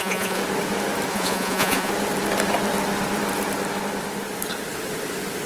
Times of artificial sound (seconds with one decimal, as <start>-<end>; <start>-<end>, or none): 0.0-0.4; 1.1-1.9